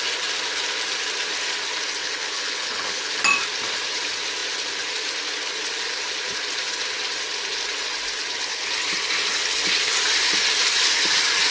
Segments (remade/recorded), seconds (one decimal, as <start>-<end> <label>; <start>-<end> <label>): 0.0-2.0 recorded; 2.0-3.2 remade; 3.2-11.5 recorded